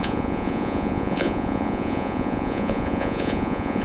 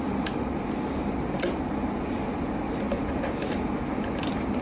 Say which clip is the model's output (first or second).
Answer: first